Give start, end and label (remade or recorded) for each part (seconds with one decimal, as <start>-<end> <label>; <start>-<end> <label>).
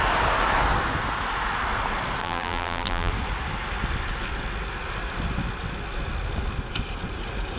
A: 0.0-2.2 recorded; 2.2-3.1 remade; 3.1-7.6 recorded